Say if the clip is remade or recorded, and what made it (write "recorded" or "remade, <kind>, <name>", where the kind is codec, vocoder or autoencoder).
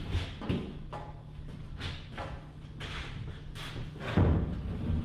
recorded